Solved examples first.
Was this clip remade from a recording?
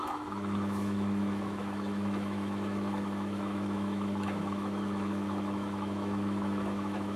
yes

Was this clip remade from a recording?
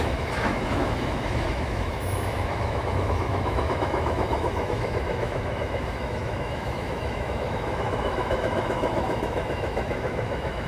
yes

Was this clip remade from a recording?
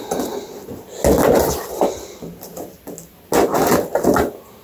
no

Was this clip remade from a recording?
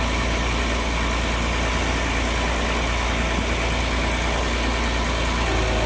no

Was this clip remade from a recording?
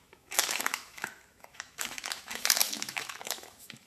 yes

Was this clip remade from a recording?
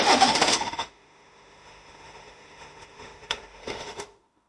yes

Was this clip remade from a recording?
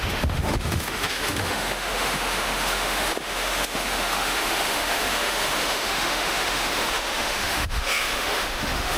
yes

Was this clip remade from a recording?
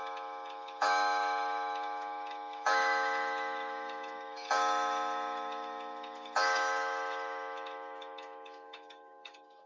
yes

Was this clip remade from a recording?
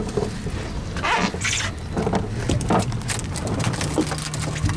no